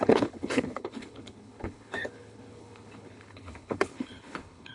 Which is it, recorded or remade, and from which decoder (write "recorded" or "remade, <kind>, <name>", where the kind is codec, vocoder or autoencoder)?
remade, codec, HILCodec